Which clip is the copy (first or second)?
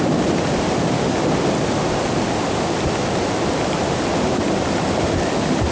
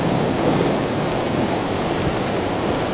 second